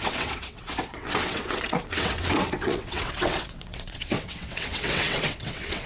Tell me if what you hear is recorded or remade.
remade